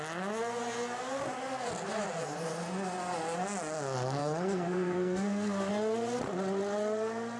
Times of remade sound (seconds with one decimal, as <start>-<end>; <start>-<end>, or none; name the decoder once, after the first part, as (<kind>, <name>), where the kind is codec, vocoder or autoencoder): 4.2-5.7 (codec, SNAC)